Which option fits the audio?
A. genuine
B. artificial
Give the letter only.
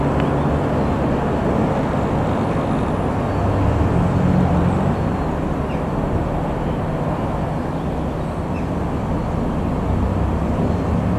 A